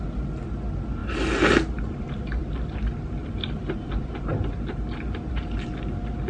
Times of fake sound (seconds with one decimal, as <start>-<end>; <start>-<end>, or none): none